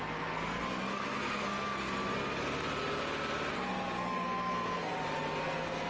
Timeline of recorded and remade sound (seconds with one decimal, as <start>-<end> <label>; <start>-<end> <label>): 0.0-1.9 remade; 1.9-3.5 recorded; 3.5-4.9 remade; 4.9-5.4 recorded; 5.4-5.9 remade